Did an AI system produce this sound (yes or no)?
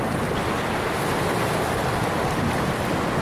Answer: no